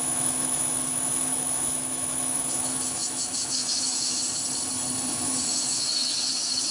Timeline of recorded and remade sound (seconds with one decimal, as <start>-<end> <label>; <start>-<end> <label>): 0.0-4.4 remade; 4.4-5.1 recorded; 5.1-6.7 remade